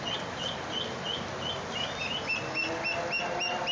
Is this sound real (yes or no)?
yes